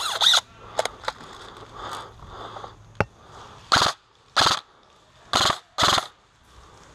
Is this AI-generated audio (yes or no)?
no